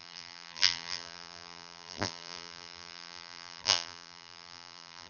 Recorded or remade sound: remade